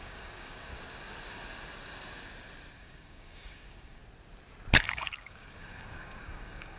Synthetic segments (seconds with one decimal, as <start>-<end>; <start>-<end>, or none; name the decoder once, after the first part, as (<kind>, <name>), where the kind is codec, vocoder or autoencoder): 0.0-0.7 (codec, DAC); 2.7-4.0; 4.8-6.8